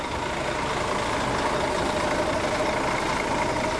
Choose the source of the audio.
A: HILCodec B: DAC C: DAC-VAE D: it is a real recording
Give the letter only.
D